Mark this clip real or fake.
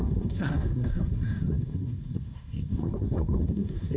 fake